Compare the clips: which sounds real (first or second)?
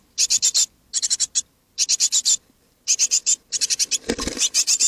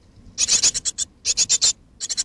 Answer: second